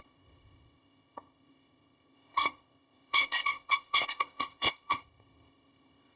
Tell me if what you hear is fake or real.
fake